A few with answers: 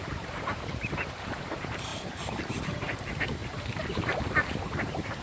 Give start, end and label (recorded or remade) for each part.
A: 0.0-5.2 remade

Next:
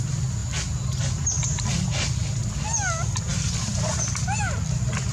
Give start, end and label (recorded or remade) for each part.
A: 0.0-5.1 recorded

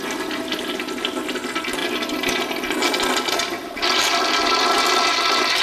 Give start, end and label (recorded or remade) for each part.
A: 0.0-5.6 recorded

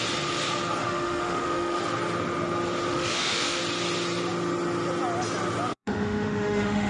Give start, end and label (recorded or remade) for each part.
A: 0.0-0.8 recorded; 0.8-1.8 remade; 1.8-2.9 recorded; 2.9-3.6 remade; 3.6-5.7 recorded; 5.7-6.9 remade